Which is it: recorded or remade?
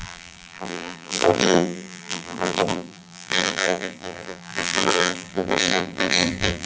remade